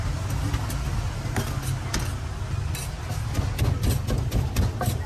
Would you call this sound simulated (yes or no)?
no